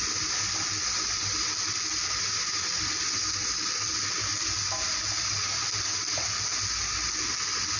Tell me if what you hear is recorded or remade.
recorded